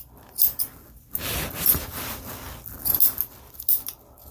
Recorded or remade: recorded